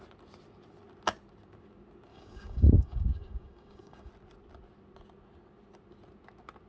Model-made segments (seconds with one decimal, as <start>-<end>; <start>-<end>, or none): 2.1-4.1